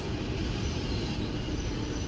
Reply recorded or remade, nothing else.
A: recorded